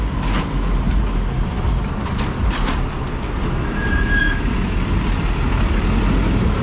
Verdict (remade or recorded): recorded